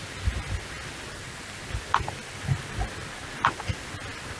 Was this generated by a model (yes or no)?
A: no